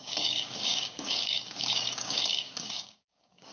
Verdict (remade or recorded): remade